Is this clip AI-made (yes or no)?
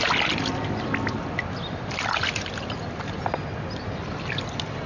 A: no